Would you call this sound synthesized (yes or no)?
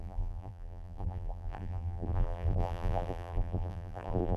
yes